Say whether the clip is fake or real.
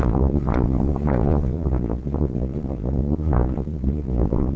fake